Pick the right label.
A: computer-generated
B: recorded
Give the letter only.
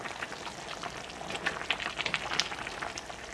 B